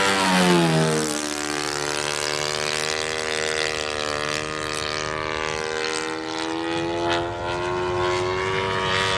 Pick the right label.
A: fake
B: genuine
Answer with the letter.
B